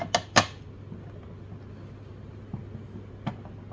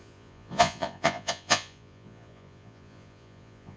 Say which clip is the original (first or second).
first